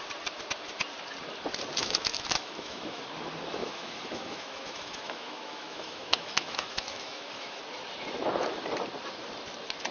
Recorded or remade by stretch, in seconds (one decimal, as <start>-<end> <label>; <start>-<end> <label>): 0.0-1.8 recorded; 1.8-3.0 remade; 3.0-3.6 recorded; 3.6-7.6 remade; 7.6-9.9 recorded